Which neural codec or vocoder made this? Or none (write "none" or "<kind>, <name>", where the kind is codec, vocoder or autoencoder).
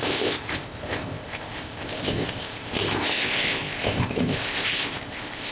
codec, ZipCodec